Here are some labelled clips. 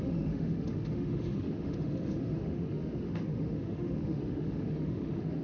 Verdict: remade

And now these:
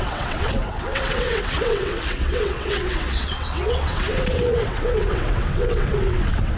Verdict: remade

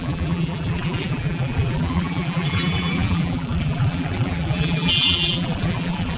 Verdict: remade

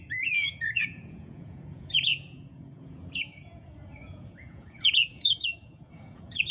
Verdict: remade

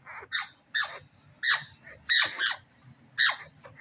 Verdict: recorded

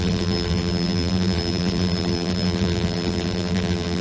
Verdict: remade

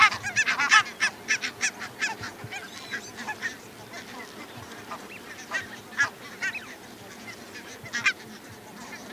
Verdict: recorded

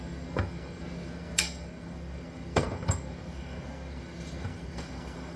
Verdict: remade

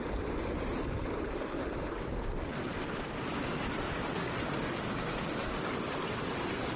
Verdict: remade